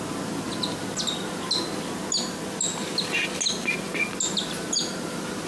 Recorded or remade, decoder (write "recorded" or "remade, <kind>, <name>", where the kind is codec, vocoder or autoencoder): recorded